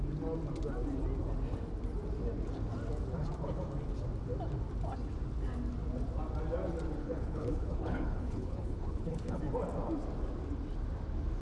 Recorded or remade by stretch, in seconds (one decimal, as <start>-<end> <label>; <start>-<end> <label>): 0.0-7.0 recorded; 7.0-9.4 remade; 9.4-11.4 recorded

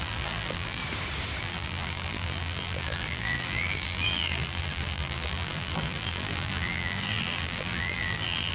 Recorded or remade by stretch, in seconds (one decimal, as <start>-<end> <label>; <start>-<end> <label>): 0.0-0.8 remade; 0.8-1.4 recorded; 1.4-8.5 remade

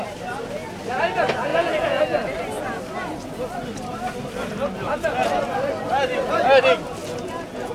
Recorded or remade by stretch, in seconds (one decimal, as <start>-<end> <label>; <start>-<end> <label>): 0.0-1.5 recorded; 1.5-2.0 remade; 2.0-7.0 recorded; 7.0-7.7 remade

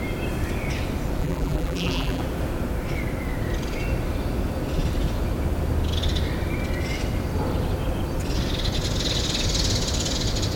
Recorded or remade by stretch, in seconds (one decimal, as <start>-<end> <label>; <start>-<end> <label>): 0.0-1.2 recorded; 1.2-2.2 remade; 2.2-10.6 recorded

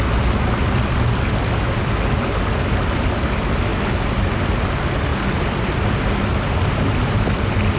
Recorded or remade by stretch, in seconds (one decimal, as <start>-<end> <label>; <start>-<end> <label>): 0.0-7.8 recorded